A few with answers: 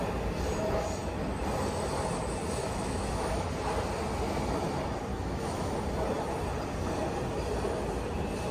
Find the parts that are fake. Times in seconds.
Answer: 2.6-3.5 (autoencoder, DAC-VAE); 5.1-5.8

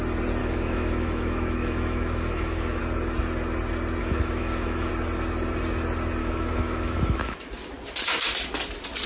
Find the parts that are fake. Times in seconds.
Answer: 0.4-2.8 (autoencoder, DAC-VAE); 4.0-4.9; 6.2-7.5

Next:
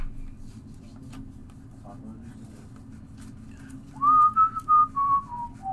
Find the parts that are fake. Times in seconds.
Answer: none